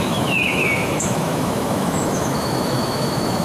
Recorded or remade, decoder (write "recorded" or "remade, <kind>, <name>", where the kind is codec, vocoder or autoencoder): remade, autoencoder, DAC-VAE